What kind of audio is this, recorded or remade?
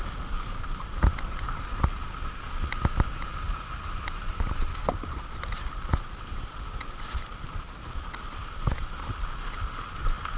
recorded